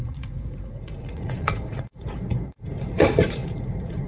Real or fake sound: fake